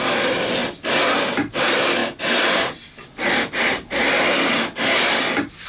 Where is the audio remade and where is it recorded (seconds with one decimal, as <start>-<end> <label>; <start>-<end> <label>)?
0.0-5.7 recorded